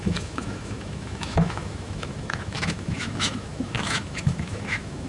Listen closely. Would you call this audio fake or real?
fake